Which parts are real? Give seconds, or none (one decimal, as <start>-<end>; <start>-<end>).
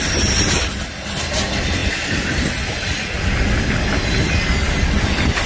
0.0-5.5